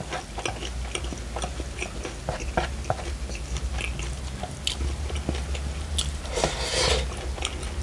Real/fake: real